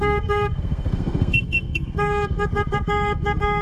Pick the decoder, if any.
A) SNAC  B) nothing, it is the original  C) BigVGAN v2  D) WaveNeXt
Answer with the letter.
A